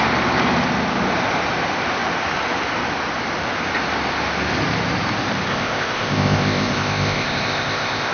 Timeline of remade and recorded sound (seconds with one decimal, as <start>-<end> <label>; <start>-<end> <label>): 0.0-5.5 recorded; 5.5-8.1 remade